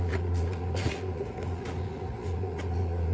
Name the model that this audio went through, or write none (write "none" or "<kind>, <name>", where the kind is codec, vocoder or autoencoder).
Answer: vocoder, Vocos